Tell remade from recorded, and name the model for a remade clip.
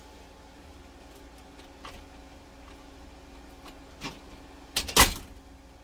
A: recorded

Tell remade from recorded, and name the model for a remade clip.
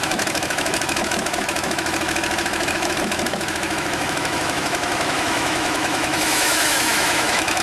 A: remade, autoencoder, DAC-VAE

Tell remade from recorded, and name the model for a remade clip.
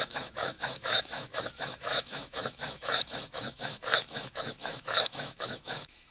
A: remade, autoencoder, DAC-VAE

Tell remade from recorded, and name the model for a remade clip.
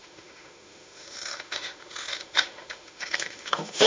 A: remade, autoencoder, DAC-VAE